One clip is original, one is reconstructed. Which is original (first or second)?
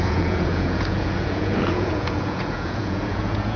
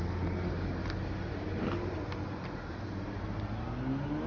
second